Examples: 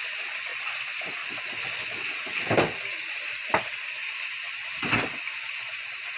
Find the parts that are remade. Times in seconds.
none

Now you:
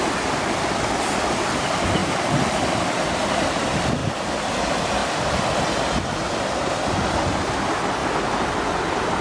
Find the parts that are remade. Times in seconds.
none

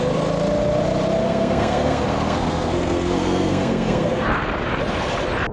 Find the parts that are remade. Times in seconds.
1.2-4.5 (codec, SNAC)